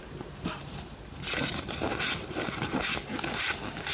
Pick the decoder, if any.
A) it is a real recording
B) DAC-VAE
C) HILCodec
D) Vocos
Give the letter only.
A